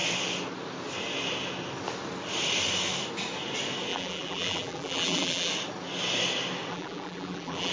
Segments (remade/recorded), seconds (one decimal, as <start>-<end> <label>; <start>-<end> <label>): 0.0-3.9 recorded; 3.9-5.5 remade; 5.5-6.7 recorded; 6.7-7.7 remade